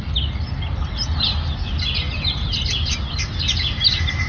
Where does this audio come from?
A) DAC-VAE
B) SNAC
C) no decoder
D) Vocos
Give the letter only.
C